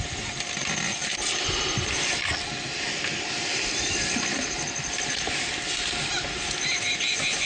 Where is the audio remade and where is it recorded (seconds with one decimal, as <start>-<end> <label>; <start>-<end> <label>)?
0.0-7.5 recorded